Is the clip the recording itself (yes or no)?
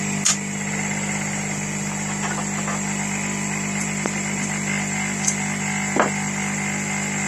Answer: yes